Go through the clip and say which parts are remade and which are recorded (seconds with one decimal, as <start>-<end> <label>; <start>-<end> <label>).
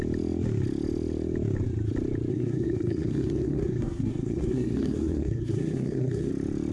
0.0-2.3 recorded; 2.3-6.3 remade; 6.3-6.7 recorded